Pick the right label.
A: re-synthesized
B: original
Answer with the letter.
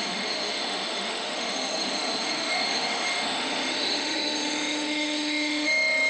A